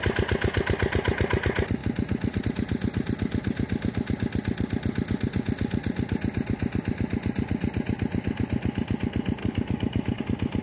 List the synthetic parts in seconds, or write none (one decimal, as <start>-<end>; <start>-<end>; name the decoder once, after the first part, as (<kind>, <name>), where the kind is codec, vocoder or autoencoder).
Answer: 9.4-10.2 (codec, DAC)

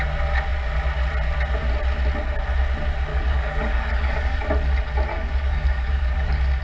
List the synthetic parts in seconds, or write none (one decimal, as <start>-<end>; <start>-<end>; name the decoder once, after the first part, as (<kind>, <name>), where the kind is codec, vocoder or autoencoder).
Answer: 3.1-4.4 (codec, DAC); 5.1-6.6

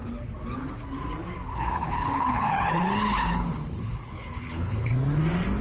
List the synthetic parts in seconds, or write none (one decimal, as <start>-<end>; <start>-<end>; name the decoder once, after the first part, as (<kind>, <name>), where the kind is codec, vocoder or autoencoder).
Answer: 1.5-4.9 (codec, HILCodec)

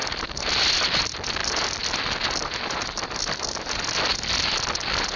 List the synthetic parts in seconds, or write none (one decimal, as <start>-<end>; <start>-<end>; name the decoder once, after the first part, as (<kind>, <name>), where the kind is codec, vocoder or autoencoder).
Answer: 1.4-1.9 (vocoder, BigVGAN v2)